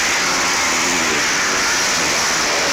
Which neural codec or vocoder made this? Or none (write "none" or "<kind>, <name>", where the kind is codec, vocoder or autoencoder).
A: none